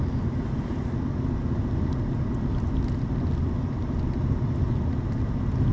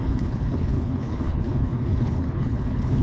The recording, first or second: first